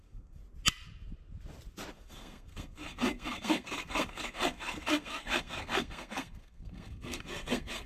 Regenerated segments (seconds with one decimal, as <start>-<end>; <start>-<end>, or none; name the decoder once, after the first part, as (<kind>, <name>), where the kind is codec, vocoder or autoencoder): 0.0-0.4 (codec, SNAC); 1.9-7.9